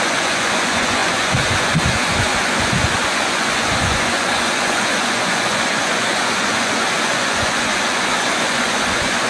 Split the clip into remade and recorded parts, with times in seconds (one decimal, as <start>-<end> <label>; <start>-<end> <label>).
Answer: 0.0-9.3 remade